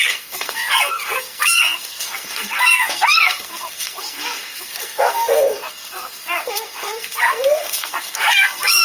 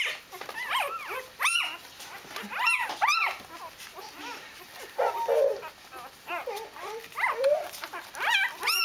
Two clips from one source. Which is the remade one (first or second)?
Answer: first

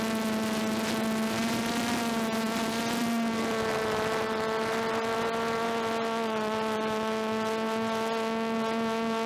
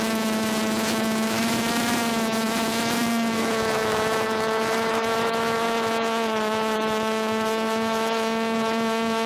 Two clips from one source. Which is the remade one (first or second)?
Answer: second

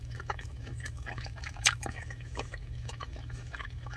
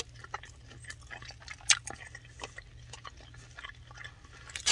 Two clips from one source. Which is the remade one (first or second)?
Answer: first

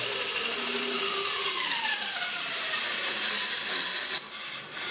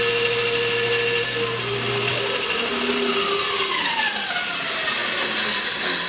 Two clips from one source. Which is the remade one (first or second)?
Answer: first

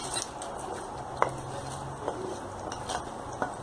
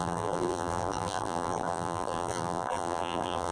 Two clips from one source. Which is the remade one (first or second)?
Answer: second